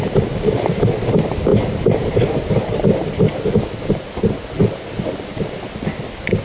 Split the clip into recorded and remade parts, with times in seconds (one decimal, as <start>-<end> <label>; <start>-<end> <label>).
0.0-6.4 recorded